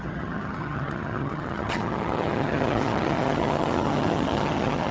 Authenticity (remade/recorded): remade